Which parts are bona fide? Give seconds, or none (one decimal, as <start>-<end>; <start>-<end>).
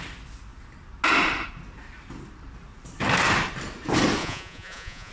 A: 0.0-4.2